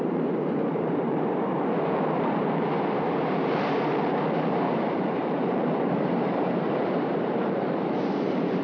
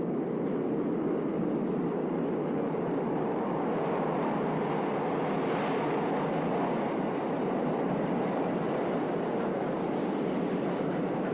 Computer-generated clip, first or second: first